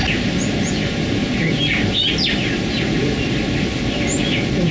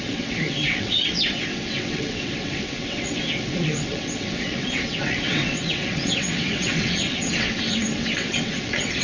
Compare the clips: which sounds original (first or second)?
first